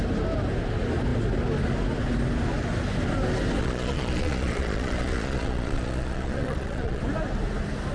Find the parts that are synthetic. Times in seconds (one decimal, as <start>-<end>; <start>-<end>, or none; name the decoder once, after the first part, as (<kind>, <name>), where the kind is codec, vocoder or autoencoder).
3.6-7.0 (vocoder, Vocos)